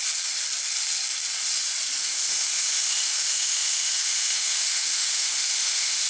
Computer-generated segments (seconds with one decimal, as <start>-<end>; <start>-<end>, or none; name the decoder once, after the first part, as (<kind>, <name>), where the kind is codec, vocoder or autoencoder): 2.0-6.1 (autoencoder, DAC-VAE)